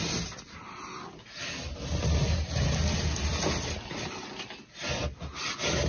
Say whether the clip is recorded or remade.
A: recorded